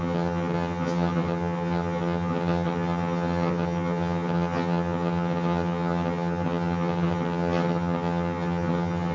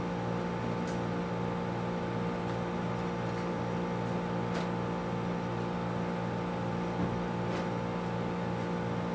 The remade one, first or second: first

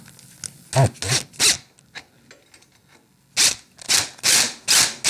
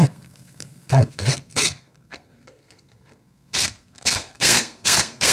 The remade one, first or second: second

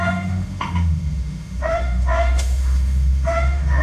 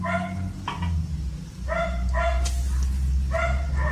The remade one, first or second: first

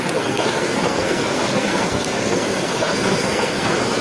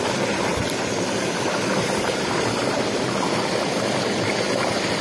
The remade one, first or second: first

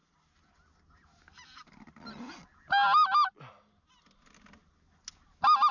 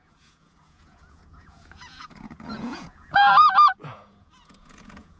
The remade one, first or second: second